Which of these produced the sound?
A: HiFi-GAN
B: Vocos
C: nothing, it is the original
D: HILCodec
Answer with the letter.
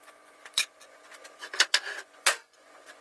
B